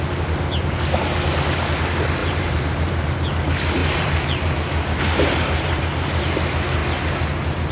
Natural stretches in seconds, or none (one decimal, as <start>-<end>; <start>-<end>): 0.0-2.2; 3.1-3.8; 6.3-7.7